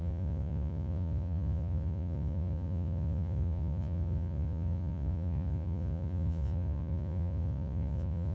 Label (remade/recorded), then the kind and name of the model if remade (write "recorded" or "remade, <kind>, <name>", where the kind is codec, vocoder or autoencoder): remade, vocoder, Vocos